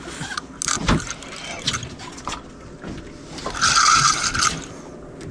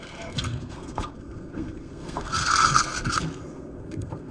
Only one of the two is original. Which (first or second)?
first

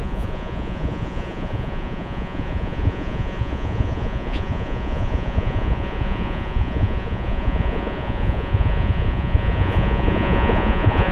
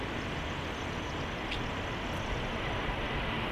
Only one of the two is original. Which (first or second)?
second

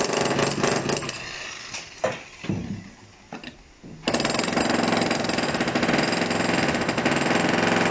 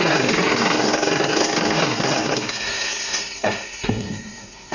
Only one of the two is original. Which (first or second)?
first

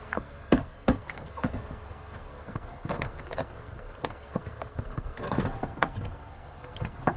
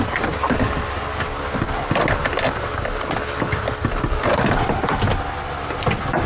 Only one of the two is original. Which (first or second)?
second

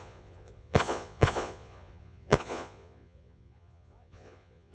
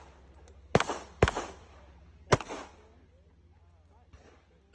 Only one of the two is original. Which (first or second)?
second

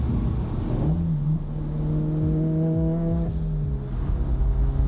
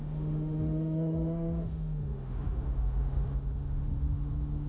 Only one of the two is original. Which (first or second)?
first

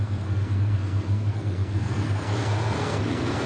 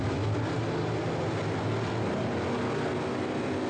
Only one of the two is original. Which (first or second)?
second